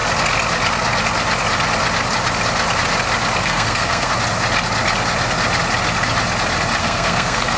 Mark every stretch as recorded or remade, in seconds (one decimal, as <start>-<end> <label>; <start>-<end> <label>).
0.0-3.4 recorded; 3.4-4.1 remade; 4.1-6.8 recorded; 6.8-7.6 remade